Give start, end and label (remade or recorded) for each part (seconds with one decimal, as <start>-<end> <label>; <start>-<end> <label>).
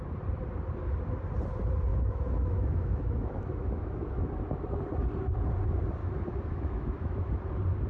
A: 0.0-1.9 recorded; 1.9-4.3 remade; 4.3-6.0 recorded; 6.0-7.3 remade; 7.3-7.9 recorded